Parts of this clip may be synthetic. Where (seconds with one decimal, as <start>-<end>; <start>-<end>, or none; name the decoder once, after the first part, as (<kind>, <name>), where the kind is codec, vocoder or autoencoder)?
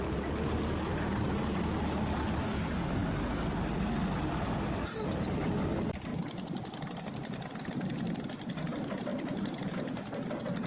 none